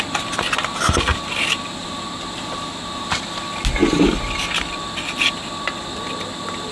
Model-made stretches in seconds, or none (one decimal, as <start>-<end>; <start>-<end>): 1.1-3.2